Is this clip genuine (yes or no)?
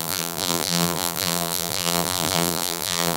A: no